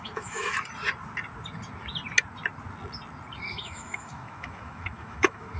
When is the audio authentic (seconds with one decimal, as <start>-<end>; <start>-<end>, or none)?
0.5-3.5